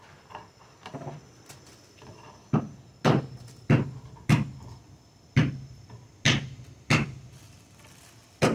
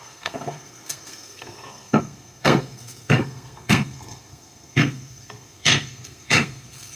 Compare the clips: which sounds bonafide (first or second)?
first